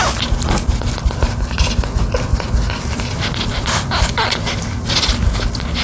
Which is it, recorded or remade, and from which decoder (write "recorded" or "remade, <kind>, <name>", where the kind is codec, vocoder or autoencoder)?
recorded